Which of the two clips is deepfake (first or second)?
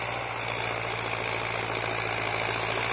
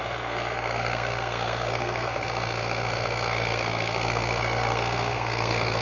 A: second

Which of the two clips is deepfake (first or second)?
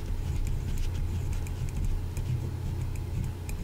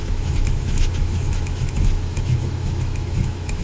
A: second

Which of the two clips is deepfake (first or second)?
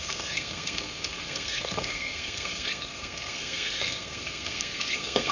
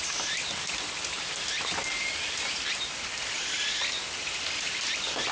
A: first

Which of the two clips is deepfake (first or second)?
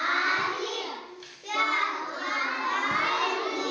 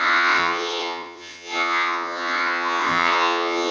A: second